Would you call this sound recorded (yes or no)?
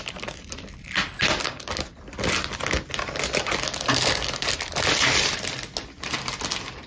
yes